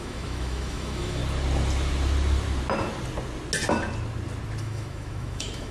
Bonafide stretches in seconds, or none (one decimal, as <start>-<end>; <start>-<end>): 1.2-4.6